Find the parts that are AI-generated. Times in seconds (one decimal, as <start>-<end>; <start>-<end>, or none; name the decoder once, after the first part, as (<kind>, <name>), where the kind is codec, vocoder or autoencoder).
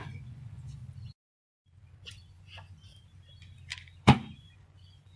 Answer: 0.0-0.8 (vocoder, Vocos); 2.1-2.9; 4.0-5.2